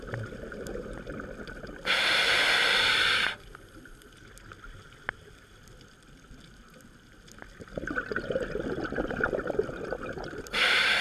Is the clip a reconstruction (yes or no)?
no